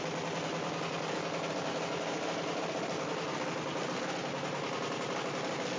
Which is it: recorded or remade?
recorded